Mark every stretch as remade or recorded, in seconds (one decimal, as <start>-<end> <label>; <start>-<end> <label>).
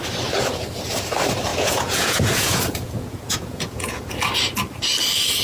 0.0-1.5 recorded; 1.5-4.1 remade; 4.1-5.4 recorded